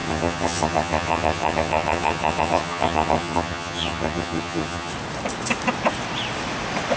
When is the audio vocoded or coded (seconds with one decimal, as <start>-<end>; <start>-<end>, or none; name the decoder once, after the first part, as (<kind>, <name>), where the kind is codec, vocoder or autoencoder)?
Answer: 0.0-4.9 (vocoder, HiFi-GAN)